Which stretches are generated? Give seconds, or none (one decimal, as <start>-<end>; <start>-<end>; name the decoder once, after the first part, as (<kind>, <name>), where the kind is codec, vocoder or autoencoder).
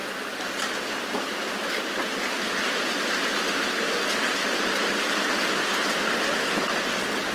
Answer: none